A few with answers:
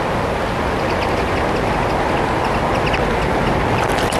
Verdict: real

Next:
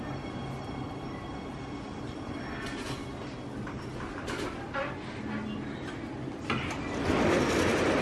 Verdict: real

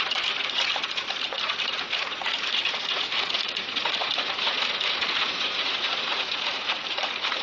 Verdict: fake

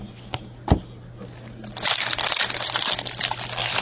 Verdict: real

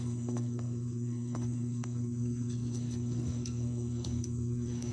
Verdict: fake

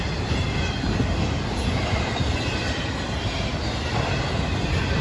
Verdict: real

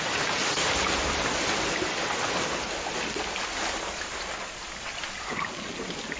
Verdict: real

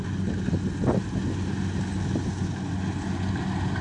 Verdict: real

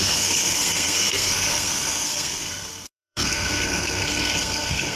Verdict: fake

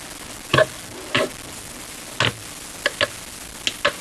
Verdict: real